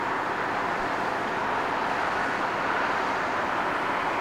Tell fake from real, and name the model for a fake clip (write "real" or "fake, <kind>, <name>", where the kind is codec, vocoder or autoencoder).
real